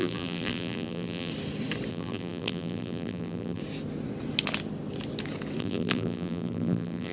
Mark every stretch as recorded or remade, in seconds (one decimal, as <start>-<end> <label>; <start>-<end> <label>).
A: 0.0-1.3 remade; 1.3-1.9 recorded; 1.9-3.6 remade; 3.6-5.6 recorded; 5.6-7.1 remade